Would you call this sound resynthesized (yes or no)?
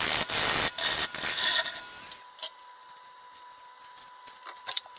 no